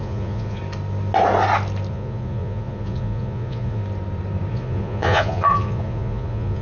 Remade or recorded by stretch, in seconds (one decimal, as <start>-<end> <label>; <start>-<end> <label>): 0.0-0.6 remade; 0.6-1.9 recorded; 1.9-3.8 remade; 3.8-4.5 recorded; 4.5-6.6 remade